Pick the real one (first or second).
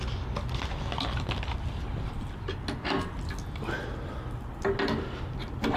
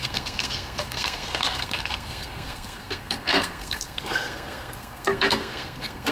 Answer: first